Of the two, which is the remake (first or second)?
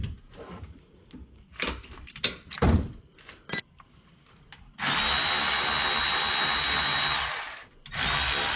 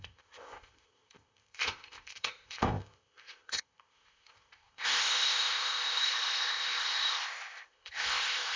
second